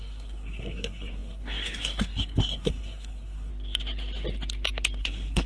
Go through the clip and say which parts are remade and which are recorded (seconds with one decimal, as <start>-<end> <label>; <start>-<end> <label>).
0.0-3.5 remade; 3.5-5.0 recorded; 5.0-5.5 remade